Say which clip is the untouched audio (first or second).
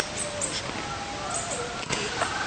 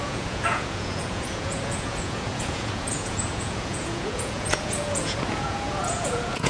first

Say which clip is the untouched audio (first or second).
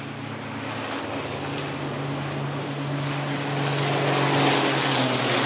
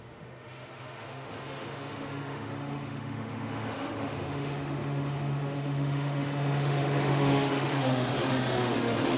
first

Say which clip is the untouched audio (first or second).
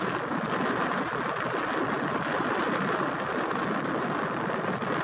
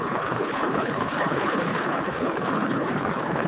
first